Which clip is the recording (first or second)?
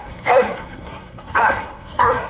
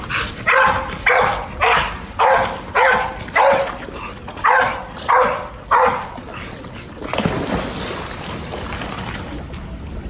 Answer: second